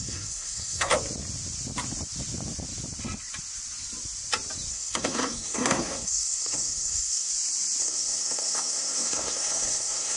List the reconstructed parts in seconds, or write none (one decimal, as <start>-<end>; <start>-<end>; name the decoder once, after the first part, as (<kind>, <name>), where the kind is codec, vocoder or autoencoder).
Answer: 0.0-0.9 (codec, SNAC); 4.7-7.3; 7.8-10.2